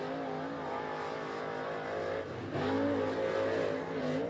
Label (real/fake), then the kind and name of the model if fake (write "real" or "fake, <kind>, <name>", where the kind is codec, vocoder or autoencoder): real